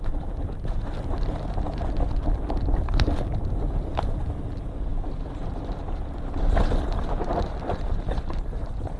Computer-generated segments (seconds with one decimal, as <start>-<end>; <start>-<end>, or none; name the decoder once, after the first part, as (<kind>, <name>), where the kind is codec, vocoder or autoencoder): none